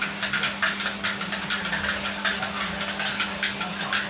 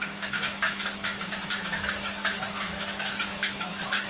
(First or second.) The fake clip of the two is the second